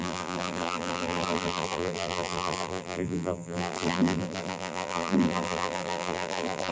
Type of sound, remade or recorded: remade